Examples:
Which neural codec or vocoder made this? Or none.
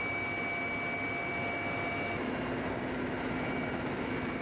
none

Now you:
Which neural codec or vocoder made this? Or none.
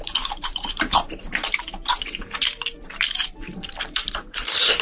vocoder, BigVGAN v2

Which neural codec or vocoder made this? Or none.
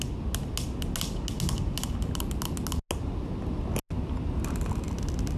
none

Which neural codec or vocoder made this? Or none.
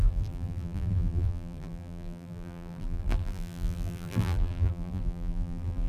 vocoder, BigVGAN v2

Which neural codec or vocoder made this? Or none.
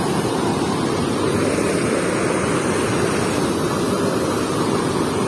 none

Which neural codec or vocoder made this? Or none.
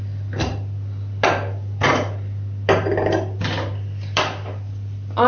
vocoder, BigVGAN v2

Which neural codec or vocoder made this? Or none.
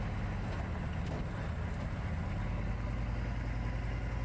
none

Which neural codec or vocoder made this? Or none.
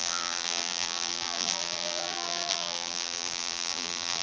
vocoder, BigVGAN v2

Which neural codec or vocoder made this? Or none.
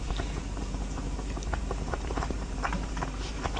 vocoder, BigVGAN v2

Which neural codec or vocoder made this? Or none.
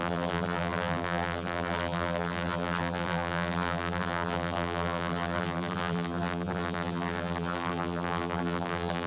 vocoder, BigVGAN v2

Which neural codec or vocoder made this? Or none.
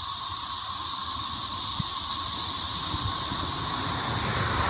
none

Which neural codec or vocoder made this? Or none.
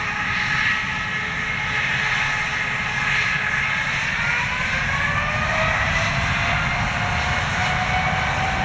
none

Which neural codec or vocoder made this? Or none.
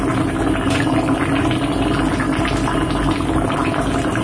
none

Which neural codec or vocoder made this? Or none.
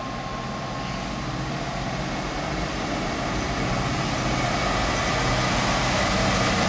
none